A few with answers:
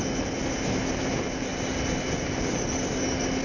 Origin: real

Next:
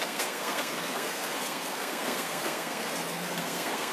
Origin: fake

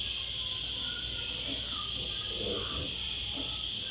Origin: real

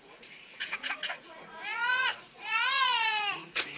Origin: fake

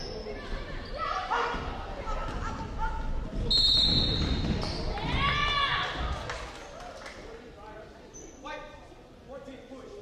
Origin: real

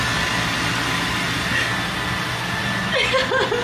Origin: real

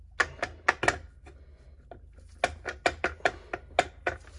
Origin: real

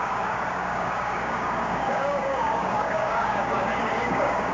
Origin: fake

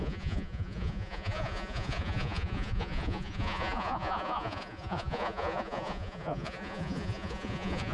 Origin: fake